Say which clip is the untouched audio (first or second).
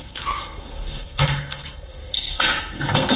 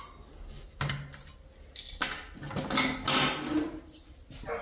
second